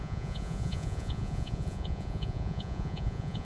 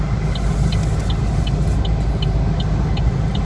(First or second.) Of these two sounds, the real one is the second